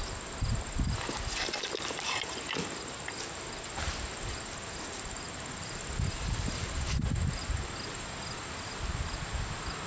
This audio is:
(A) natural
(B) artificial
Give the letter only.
A